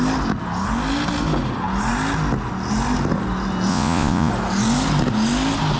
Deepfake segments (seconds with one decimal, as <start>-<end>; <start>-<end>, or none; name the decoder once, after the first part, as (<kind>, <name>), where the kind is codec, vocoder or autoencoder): 3.7-4.3 (vocoder, Vocos)